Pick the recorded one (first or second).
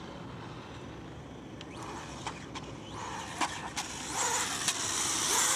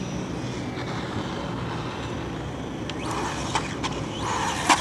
second